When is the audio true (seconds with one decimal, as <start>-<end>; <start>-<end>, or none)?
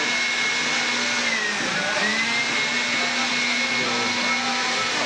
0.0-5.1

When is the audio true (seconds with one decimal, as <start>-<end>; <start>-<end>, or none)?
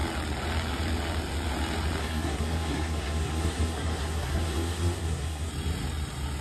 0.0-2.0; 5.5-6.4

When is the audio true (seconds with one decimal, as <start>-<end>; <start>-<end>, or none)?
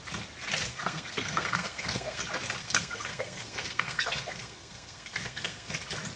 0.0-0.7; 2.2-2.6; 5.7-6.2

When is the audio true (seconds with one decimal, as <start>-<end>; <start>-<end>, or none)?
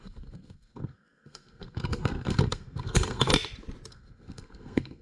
3.3-3.9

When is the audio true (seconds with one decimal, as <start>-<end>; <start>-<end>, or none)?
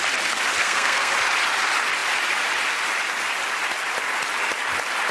0.0-0.6; 1.1-5.1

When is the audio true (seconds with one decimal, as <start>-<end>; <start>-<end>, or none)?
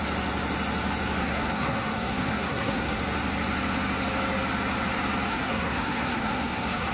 0.0-1.2; 3.0-5.3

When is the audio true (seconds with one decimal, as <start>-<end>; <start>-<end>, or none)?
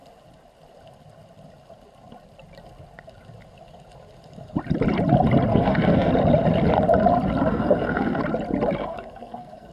0.0-5.5; 6.1-7.5; 8.2-8.8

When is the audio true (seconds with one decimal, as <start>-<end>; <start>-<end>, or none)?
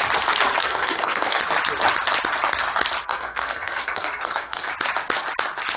0.0-0.6; 1.4-3.0; 4.7-5.8